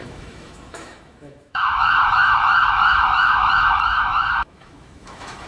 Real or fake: fake